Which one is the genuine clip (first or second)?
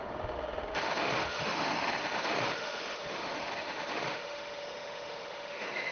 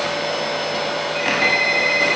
second